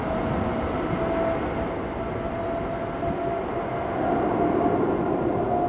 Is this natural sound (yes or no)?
yes